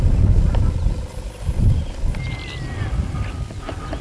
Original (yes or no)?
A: yes